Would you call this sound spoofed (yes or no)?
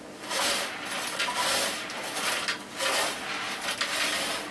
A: no